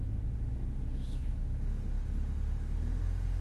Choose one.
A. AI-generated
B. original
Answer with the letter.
A